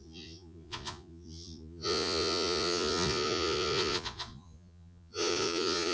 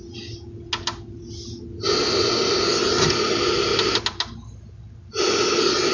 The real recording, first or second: second